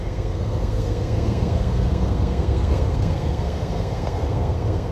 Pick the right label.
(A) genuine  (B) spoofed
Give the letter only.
B